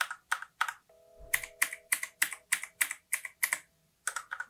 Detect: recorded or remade recorded